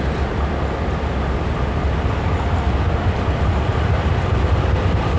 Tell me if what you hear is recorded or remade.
recorded